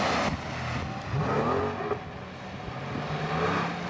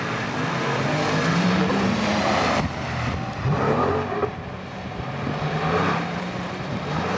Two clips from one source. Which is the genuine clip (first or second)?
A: first